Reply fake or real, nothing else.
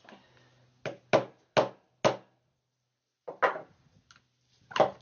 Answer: real